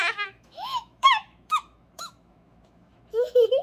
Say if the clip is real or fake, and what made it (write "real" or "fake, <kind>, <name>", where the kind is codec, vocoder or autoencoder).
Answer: fake, autoencoder, DAC-VAE